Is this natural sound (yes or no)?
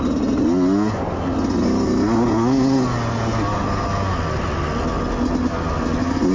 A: yes